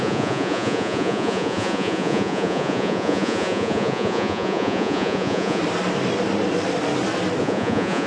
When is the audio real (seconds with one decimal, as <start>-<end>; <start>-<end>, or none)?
5.6-7.4

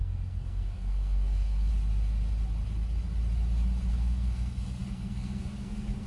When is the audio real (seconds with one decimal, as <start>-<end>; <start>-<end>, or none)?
1.7-3.9

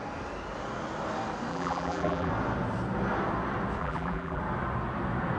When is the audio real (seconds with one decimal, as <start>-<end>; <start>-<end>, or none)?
0.0-1.5; 2.3-3.8; 4.4-5.4

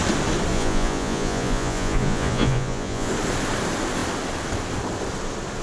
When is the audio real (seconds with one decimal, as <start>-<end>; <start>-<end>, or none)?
0.0-0.5; 3.1-5.6

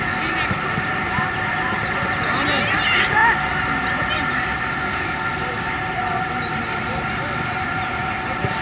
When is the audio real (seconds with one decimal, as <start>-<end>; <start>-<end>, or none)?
0.0-5.3; 7.5-8.0

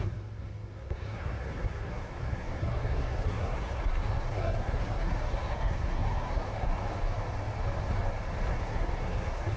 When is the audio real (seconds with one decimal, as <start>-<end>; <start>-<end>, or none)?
6.7-8.5

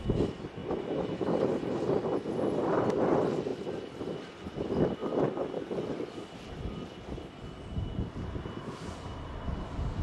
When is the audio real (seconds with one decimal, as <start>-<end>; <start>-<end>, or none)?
0.0-10.0